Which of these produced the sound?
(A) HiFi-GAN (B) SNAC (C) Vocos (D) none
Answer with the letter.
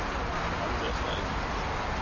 D